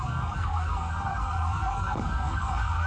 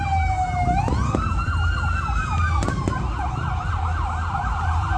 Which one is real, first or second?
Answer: second